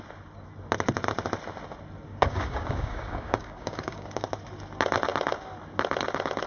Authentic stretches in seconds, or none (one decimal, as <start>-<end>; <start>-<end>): 0.0-2.1; 4.2-6.5